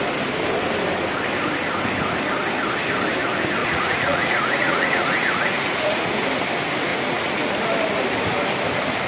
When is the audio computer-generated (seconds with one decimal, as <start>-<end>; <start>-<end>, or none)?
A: 3.6-6.1; 6.9-7.5